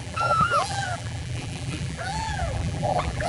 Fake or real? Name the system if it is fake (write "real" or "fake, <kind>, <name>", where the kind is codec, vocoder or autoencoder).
fake, vocoder, BigVGAN v2